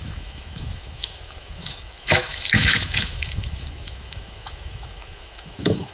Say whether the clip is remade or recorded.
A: remade